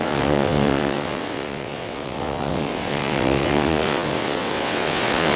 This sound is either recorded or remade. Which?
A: remade